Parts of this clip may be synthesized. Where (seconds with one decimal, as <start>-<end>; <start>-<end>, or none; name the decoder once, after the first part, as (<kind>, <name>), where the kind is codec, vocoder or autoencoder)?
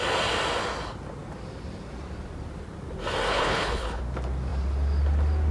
3.3-4.0 (codec, HILCodec)